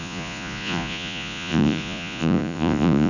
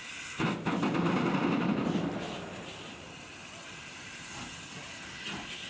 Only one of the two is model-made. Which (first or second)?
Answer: first